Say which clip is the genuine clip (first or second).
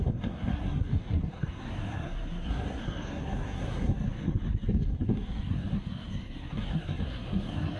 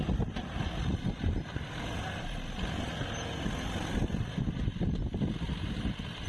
second